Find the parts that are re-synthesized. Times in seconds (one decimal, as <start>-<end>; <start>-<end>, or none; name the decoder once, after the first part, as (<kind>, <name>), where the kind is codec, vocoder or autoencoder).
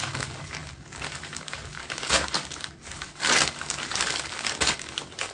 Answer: 0.0-5.3 (codec, DAC)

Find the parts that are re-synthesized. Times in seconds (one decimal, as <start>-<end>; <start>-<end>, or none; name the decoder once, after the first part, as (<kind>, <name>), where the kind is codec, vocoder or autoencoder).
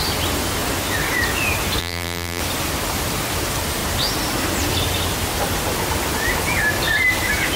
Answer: 1.8-2.4 (vocoder, BigVGAN v2)